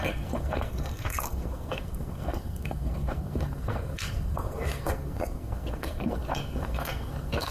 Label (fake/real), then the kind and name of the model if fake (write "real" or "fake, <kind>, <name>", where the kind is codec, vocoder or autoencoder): fake, codec, SNAC